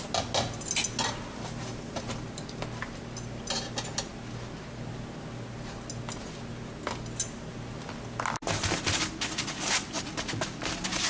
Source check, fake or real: real